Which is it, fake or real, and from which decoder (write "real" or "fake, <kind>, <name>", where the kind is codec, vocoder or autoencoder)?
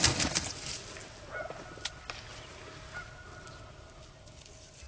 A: real